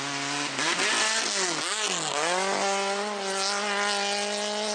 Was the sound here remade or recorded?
recorded